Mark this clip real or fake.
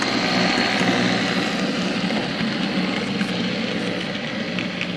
real